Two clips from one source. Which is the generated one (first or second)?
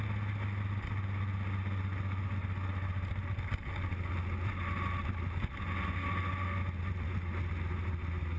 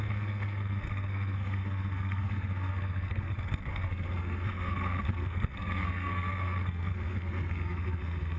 second